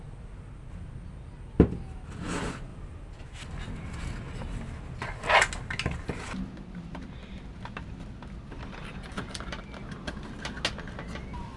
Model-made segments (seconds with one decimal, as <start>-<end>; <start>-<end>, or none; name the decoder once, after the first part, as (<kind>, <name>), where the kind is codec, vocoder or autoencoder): 2.7-3.2 (vocoder, BigVGAN v2)